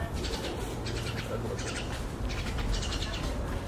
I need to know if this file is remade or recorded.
remade